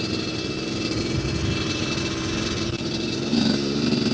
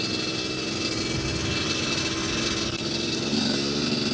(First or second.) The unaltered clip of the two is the second